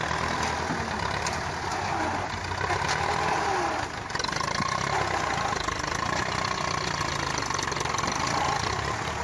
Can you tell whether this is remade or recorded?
recorded